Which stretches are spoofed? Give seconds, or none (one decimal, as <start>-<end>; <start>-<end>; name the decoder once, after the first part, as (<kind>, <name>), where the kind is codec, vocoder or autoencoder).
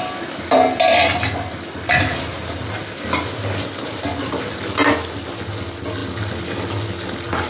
none